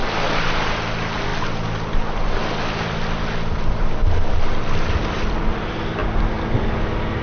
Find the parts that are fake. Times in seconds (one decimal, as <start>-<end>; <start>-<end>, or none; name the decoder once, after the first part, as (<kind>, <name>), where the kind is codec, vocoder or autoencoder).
none